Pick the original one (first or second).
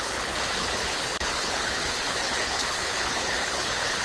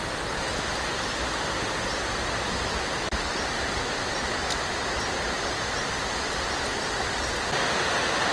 second